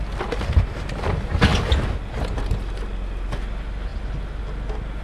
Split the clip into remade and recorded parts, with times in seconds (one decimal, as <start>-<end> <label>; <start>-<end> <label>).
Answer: 0.0-5.0 recorded